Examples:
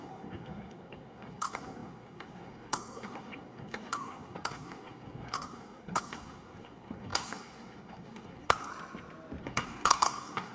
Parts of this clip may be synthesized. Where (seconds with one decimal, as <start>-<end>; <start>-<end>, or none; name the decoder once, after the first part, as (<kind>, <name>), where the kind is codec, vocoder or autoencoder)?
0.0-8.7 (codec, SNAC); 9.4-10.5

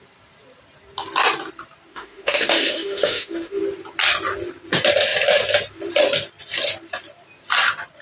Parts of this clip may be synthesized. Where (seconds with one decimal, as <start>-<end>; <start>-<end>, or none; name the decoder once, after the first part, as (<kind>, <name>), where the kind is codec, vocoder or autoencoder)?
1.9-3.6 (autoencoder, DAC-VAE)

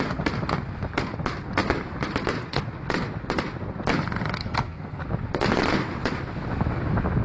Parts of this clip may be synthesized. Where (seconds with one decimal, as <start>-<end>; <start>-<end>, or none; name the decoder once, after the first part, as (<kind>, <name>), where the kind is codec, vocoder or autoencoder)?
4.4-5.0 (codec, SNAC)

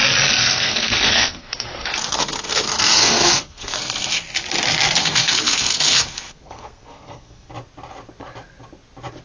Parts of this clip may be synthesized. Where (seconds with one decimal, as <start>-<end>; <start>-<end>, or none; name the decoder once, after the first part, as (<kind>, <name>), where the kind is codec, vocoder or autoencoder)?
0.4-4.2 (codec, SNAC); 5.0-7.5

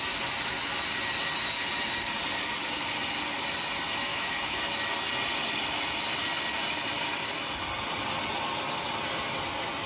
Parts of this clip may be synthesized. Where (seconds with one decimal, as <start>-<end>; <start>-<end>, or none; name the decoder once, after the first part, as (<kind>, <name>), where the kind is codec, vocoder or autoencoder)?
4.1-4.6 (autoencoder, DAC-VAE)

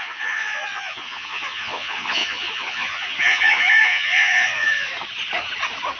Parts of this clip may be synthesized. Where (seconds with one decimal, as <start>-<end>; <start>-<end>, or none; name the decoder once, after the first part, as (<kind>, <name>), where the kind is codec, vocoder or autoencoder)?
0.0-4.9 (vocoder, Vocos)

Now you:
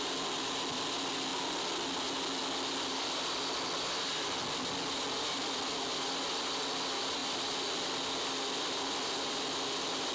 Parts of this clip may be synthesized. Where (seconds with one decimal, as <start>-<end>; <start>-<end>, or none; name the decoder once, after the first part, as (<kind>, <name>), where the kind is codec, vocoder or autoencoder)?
none

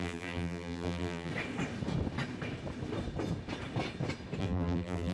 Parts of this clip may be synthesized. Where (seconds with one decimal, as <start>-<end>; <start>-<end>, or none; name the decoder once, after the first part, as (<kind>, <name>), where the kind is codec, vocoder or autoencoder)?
0.0-1.3 (vocoder, BigVGAN v2); 4.4-5.1